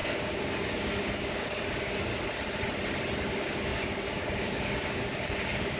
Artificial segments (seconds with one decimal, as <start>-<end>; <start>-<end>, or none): 0.0-2.1; 3.3-5.8